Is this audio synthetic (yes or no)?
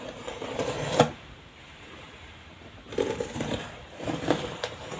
yes